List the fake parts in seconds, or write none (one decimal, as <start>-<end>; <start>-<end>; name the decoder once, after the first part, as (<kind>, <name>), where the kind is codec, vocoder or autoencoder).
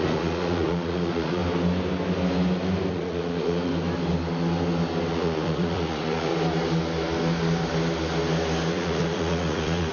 0.0-1.4 (vocoder, Vocos); 2.9-3.7; 5.1-6.3; 8.7-9.9